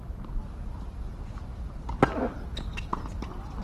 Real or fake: real